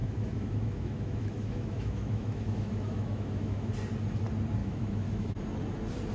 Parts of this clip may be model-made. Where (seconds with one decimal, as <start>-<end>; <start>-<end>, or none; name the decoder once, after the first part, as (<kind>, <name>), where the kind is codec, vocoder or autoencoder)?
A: 0.0-3.7 (autoencoder, DAC-VAE); 4.6-5.3